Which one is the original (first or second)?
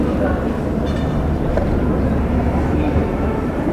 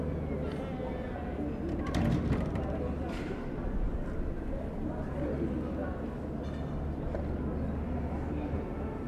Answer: second